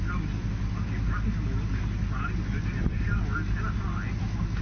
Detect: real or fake real